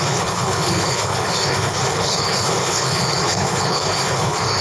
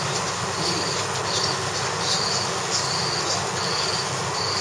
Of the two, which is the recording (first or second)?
second